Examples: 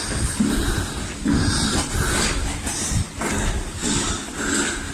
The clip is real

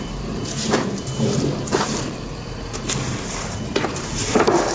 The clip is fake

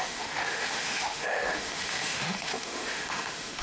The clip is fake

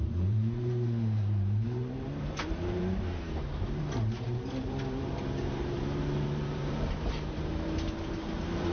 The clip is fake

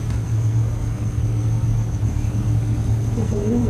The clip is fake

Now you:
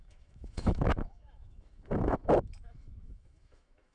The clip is fake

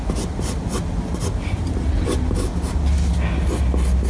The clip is real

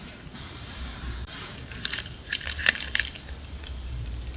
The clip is fake